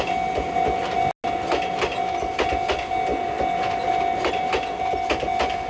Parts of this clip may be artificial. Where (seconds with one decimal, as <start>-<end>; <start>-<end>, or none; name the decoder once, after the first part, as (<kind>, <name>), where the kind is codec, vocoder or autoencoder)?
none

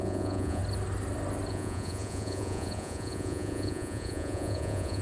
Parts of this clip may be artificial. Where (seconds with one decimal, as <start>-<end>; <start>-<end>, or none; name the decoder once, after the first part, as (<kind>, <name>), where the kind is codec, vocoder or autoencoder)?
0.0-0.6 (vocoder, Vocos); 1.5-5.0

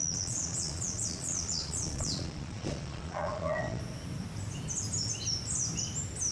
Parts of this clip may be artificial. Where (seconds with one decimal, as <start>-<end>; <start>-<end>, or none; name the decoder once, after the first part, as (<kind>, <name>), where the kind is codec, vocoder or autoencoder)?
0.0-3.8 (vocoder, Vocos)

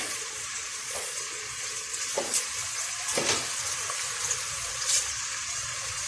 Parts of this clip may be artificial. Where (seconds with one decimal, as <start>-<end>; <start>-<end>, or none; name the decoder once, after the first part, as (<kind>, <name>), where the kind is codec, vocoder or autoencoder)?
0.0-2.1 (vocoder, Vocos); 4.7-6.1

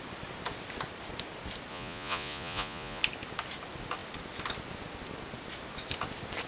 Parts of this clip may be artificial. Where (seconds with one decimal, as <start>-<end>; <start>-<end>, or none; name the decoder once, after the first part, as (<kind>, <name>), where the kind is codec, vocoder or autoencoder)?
1.7-3.0 (vocoder, Vocos)

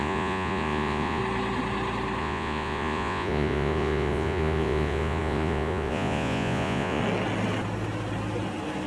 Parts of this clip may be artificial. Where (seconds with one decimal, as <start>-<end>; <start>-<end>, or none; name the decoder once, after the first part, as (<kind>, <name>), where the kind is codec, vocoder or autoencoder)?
0.0-1.2 (vocoder, Vocos); 2.2-7.0

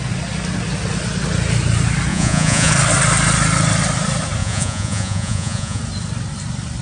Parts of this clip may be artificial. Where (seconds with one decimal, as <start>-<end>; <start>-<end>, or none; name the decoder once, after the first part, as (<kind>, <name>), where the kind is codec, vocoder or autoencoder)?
2.1-2.7 (vocoder, Vocos); 4.4-5.8